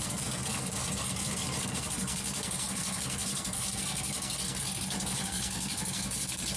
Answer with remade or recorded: remade